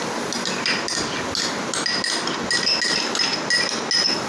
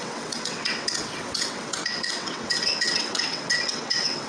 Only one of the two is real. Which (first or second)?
first